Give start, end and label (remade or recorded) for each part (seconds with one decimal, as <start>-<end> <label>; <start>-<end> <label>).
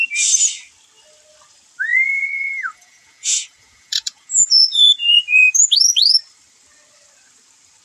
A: 0.0-1.9 recorded; 1.9-6.2 remade; 6.2-7.8 recorded